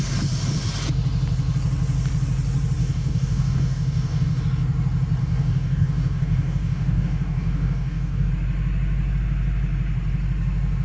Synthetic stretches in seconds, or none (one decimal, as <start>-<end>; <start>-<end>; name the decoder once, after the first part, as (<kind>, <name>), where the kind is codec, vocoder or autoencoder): 2.8-4.4 (codec, DAC); 5.2-8.3